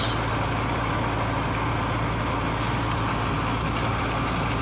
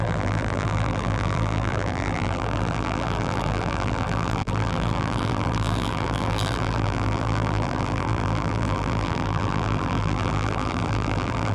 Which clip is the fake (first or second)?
second